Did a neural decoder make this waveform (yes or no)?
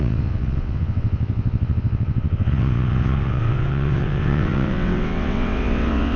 yes